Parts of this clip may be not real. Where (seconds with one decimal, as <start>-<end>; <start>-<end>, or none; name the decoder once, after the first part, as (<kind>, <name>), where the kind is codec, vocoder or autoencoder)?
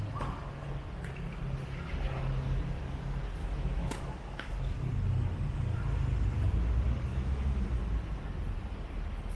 3.4-4.5 (autoencoder, DAC-VAE); 7.1-7.8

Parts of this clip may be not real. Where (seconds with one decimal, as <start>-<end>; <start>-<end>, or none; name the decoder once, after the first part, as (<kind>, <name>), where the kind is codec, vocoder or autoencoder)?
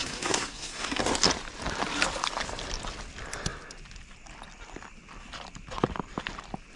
0.0-1.0 (codec, SNAC)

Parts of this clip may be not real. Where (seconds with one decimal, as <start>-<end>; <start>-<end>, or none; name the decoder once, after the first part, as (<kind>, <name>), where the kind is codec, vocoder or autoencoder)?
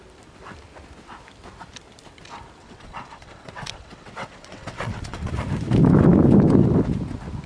2.6-5.3 (vocoder, WaveNeXt)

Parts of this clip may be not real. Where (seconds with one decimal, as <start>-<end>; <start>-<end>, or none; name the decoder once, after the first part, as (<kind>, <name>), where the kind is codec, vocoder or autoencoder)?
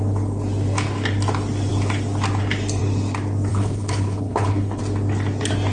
3.5-4.8 (codec, HILCodec)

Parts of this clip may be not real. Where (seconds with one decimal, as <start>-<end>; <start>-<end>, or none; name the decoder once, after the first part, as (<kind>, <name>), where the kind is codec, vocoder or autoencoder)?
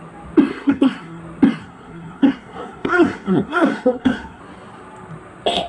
0.5-1.2 (codec, SNAC); 1.6-4.4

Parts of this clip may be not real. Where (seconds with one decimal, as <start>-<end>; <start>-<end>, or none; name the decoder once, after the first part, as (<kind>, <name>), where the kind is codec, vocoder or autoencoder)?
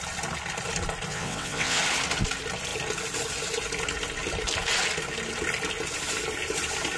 1.1-1.8 (vocoder, WaveNeXt)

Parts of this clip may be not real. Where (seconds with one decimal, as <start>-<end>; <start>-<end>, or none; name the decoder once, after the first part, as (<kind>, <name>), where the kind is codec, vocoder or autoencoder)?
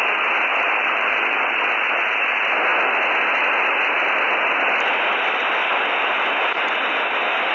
0.5-1.6 (vocoder, BigVGAN v2)